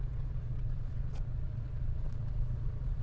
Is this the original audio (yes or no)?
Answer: no